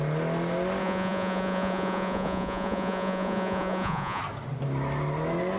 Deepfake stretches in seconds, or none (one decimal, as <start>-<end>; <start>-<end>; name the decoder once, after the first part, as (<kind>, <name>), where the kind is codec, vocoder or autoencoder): 0.8-4.2 (vocoder, Vocos)